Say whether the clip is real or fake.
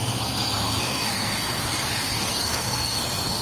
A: fake